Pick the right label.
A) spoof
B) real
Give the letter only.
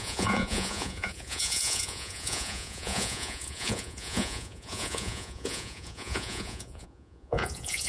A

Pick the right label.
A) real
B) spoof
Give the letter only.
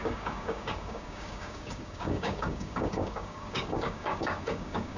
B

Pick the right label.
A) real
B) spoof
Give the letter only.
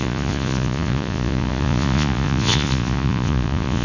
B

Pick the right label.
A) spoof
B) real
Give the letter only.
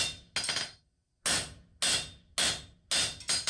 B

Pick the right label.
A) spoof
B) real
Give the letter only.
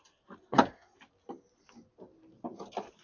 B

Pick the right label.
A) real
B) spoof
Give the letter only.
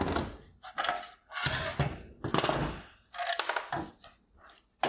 A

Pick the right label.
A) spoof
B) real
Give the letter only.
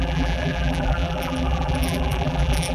A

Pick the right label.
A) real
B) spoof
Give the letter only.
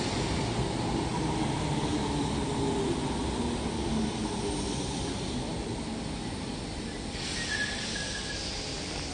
A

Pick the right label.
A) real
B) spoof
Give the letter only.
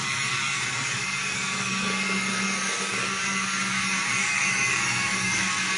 B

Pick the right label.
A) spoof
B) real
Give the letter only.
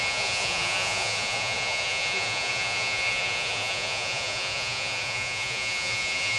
A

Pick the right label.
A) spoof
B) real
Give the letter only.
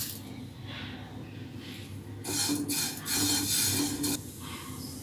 B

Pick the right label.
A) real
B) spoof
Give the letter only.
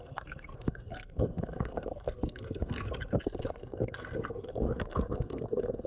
B